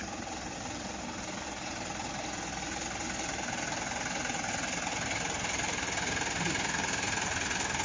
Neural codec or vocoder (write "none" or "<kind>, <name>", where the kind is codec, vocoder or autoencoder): none